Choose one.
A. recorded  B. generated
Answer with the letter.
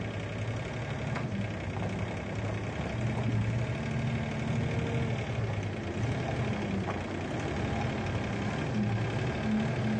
A